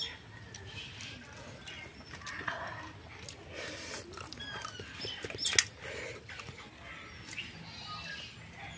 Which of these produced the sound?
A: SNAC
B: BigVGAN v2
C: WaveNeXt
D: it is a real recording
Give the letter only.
D